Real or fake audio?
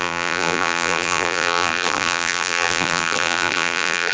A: fake